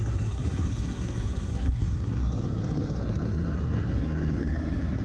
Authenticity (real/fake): fake